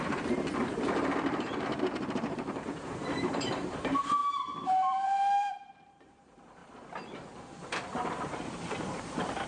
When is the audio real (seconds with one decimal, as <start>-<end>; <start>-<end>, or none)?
6.6-7.7